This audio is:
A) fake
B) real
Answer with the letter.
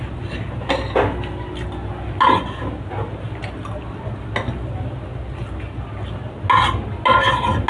B